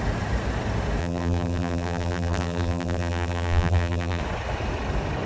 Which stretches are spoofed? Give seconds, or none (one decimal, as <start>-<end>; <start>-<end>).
1.0-4.2